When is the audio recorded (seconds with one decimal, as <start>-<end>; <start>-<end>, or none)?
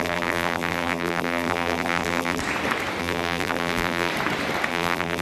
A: 2.4-3.0; 4.1-4.7